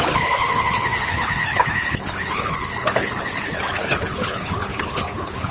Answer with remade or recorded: remade